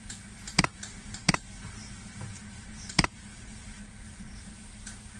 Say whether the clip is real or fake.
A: fake